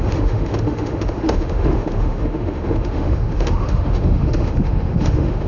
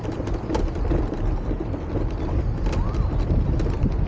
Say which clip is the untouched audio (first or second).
second